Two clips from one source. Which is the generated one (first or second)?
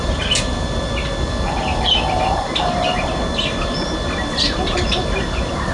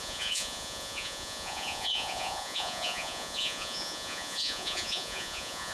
second